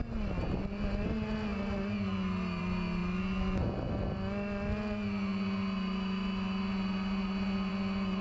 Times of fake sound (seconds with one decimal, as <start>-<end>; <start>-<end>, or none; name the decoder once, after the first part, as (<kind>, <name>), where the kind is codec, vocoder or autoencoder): none